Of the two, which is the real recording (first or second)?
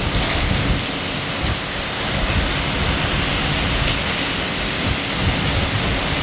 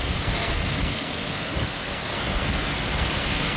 first